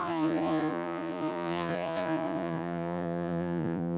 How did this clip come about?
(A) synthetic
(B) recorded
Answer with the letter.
A